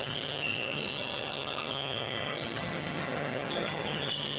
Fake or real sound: fake